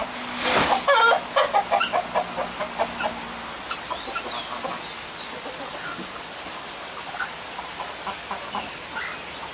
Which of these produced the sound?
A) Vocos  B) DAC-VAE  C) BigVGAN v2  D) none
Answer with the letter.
D